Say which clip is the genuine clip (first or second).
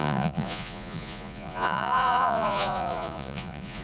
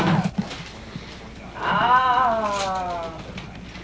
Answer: second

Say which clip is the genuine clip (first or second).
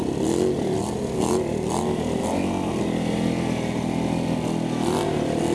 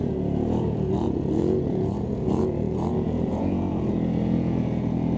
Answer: first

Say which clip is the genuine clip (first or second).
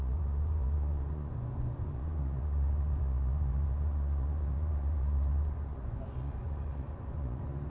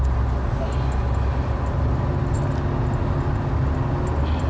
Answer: second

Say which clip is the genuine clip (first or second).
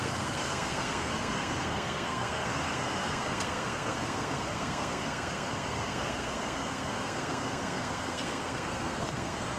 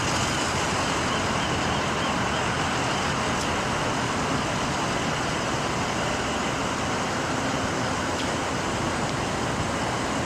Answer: second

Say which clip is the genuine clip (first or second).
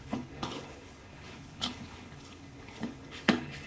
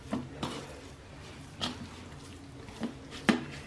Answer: second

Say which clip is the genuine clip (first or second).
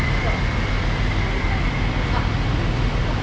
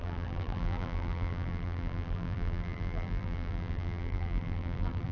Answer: first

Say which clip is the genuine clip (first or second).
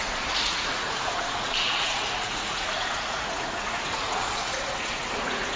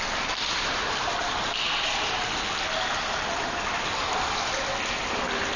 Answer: second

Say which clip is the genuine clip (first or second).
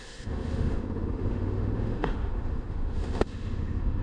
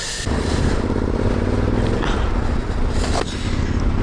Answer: second